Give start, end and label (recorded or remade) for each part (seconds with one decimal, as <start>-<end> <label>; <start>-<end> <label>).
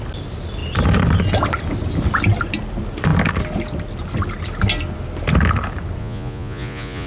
0.0-6.0 recorded; 6.0-7.1 remade